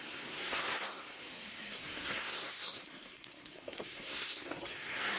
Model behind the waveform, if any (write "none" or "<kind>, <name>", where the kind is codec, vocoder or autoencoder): codec, SNAC